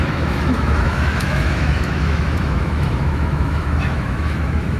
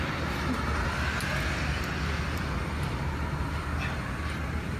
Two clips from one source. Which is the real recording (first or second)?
second